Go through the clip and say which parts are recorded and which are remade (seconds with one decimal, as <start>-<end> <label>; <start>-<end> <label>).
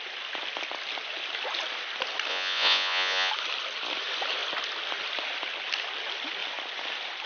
0.0-2.3 recorded; 2.3-3.3 remade; 3.3-7.3 recorded